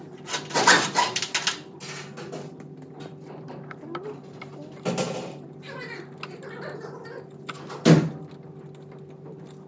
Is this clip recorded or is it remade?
recorded